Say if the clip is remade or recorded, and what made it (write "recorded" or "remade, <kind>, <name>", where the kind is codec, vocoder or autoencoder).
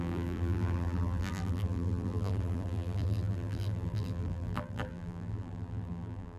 remade, vocoder, BigVGAN v2